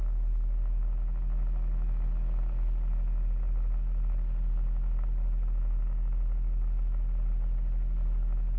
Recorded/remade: recorded